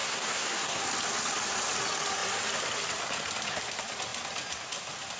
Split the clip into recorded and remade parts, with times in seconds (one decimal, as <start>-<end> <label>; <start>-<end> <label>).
0.0-0.8 remade; 0.8-5.2 recorded